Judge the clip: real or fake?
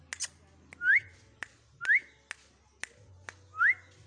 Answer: real